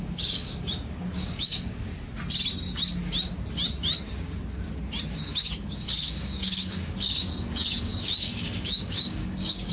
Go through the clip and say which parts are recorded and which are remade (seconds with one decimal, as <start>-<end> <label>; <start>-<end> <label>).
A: 0.0-1.9 remade; 1.9-5.1 recorded; 5.1-9.7 remade